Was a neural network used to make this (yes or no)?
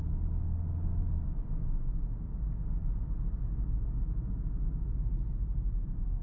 no